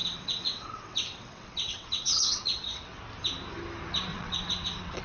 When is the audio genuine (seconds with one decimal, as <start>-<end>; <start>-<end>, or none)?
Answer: 3.0-4.1